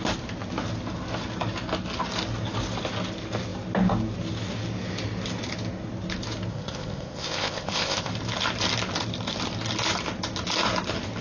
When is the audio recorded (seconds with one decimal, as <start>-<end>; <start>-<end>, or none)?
0.0-6.5; 8.1-11.2